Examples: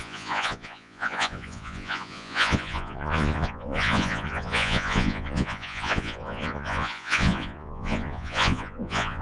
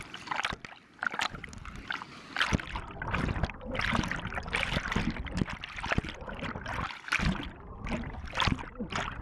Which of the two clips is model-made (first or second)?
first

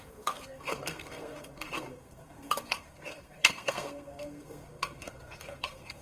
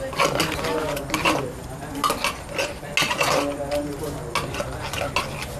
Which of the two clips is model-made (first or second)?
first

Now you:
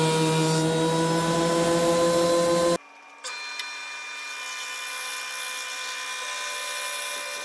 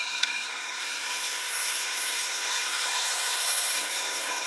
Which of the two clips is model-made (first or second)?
second